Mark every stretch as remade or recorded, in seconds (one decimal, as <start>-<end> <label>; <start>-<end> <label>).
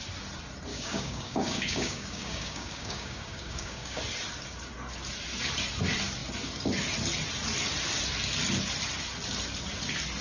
0.0-0.7 recorded; 0.7-4.0 remade; 4.0-10.2 recorded